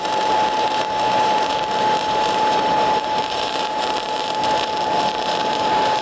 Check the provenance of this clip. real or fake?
fake